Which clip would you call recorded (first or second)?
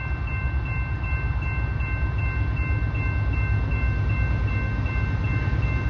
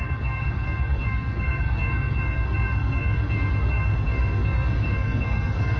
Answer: first